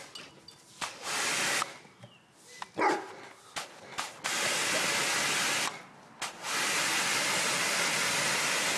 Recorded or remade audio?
recorded